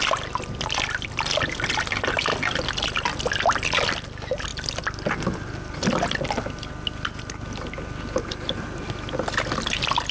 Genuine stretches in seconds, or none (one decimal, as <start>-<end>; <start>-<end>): 0.0-10.1